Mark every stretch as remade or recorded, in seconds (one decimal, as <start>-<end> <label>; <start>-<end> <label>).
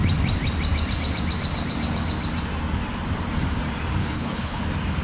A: 0.0-4.0 recorded; 4.0-4.6 remade; 4.6-5.0 recorded